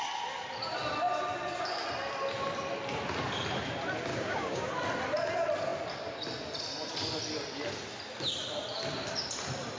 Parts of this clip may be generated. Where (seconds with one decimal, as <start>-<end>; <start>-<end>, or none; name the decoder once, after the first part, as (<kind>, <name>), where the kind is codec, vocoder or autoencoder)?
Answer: 4.1-4.7 (codec, DAC)